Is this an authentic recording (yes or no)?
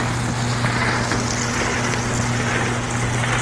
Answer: yes